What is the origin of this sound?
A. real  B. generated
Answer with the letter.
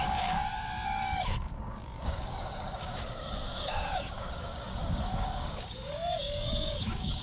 B